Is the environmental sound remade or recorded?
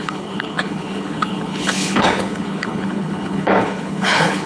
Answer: remade